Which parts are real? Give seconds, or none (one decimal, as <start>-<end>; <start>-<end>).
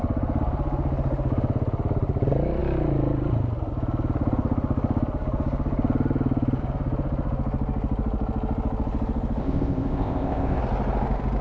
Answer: 0.0-9.4; 10.6-11.4